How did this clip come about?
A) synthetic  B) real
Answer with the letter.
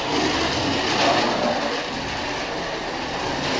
B